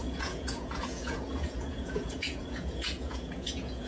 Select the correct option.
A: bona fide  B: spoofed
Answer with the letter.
B